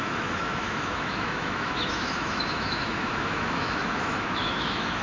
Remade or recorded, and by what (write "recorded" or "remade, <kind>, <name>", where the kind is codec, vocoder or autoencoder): remade, autoencoder, DAC-VAE